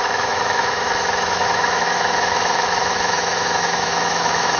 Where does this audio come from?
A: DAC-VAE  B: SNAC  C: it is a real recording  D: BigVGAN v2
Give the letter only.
A